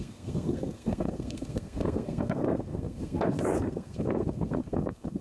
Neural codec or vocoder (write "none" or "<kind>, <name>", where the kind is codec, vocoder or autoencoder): codec, SNAC